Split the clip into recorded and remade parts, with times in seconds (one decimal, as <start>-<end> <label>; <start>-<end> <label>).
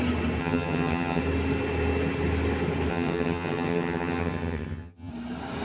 0.0-0.4 recorded; 0.4-1.2 remade; 1.2-2.9 recorded; 2.9-5.1 remade; 5.1-5.6 recorded